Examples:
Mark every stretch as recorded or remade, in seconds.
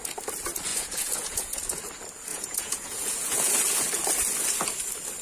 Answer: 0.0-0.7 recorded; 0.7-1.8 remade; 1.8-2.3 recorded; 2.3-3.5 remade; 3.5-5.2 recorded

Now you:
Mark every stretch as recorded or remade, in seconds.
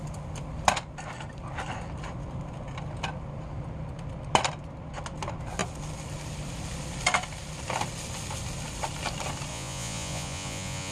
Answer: 0.0-9.5 recorded; 9.5-10.9 remade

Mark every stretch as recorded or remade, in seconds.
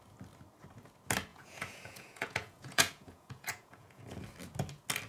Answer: 0.0-1.3 recorded; 1.3-4.0 remade; 4.0-5.1 recorded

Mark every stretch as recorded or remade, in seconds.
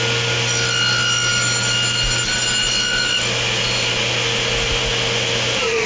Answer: 0.0-5.9 recorded